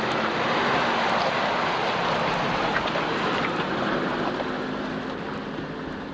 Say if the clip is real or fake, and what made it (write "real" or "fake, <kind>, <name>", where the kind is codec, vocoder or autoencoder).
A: real